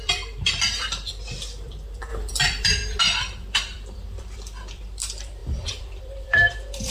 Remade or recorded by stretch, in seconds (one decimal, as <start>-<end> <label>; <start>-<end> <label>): 0.0-6.9 remade